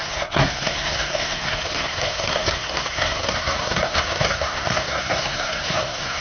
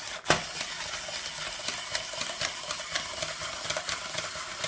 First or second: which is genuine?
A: second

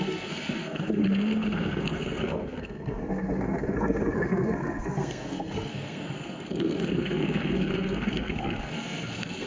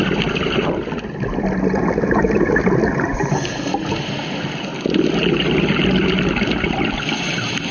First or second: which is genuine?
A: second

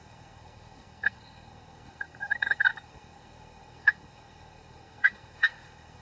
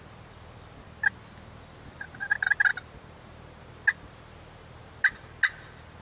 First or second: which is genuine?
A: second